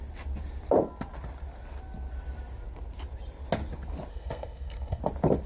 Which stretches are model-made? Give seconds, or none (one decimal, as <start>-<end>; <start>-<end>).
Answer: 4.1-5.0